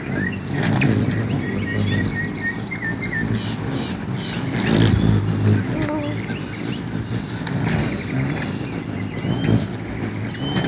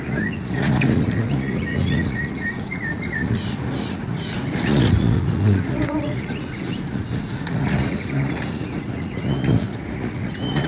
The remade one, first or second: second